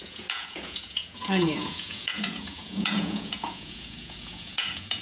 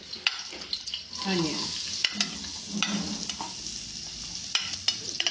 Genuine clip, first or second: second